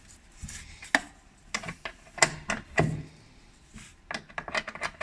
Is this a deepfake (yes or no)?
no